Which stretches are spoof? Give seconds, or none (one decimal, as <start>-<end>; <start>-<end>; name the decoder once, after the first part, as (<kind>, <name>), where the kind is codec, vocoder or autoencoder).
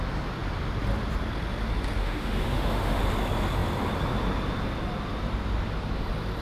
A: 2.0-3.0 (autoencoder, DAC-VAE)